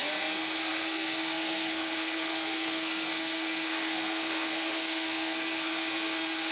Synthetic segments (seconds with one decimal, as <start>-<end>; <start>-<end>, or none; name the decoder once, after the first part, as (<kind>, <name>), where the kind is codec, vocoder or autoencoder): 0.0-6.5 (codec, SNAC)